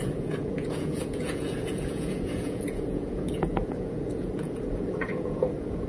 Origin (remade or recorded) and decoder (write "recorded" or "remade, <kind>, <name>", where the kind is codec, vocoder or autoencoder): remade, vocoder, Vocos